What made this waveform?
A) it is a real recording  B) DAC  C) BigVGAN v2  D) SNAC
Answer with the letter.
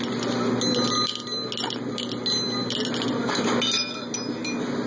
A